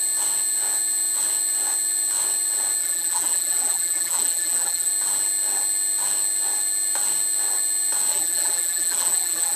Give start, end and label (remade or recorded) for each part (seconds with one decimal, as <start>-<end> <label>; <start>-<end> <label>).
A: 0.0-2.8 recorded; 2.8-4.9 remade; 4.9-8.1 recorded; 8.1-9.6 remade